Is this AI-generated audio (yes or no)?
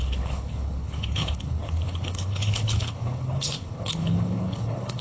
yes